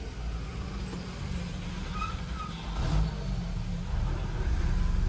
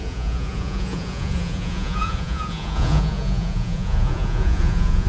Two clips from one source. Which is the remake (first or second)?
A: second